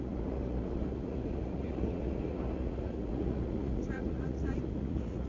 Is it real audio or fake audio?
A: fake